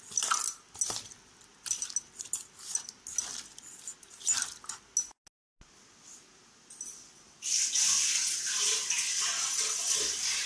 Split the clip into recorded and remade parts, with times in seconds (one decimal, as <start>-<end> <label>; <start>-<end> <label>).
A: 0.0-9.3 recorded; 9.3-10.0 remade; 10.0-10.5 recorded